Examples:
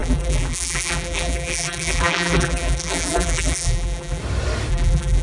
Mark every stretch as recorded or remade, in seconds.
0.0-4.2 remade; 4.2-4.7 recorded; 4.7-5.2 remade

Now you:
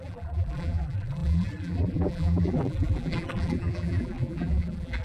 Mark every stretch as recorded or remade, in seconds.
0.0-5.0 remade